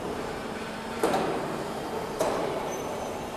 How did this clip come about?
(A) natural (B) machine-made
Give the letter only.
B